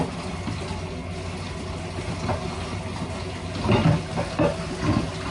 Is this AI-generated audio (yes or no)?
no